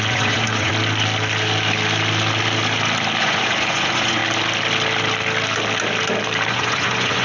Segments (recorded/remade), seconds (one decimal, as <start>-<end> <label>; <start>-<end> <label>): 0.0-0.7 remade; 0.7-3.2 recorded; 3.2-4.2 remade; 4.2-6.5 recorded; 6.5-7.2 remade

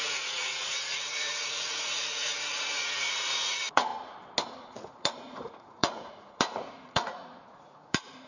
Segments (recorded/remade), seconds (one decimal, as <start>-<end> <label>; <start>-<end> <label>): 0.0-3.9 remade; 3.9-4.5 recorded; 4.5-8.3 remade

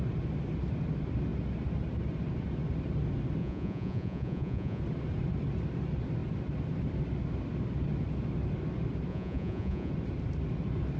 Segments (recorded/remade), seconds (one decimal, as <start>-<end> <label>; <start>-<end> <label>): 0.0-3.4 recorded; 3.4-4.8 remade; 4.8-9.1 recorded; 9.1-9.9 remade; 9.9-11.0 recorded

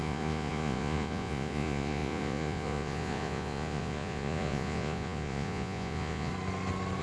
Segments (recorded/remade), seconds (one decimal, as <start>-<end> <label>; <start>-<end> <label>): 0.0-6.3 remade; 6.3-7.0 recorded

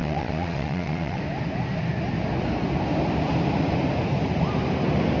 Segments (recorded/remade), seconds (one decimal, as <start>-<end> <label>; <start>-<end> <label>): 0.0-1.2 remade; 1.2-5.2 recorded